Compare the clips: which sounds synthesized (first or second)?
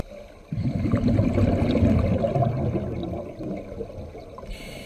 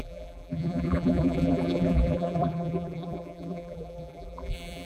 second